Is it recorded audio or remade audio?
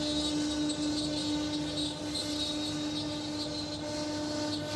recorded